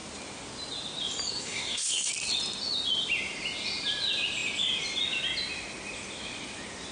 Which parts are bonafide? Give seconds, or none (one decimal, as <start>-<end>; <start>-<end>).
0.0-1.3; 2.1-6.9